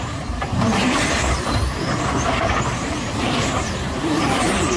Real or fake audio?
fake